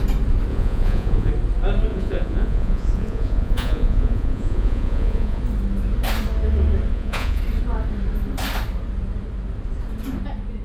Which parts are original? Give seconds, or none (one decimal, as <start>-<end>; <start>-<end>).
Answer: 0.0-0.5; 1.3-1.9; 5.4-6.9; 7.4-10.6